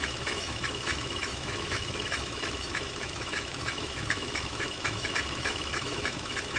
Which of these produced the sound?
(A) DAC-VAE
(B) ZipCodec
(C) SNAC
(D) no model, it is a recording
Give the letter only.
A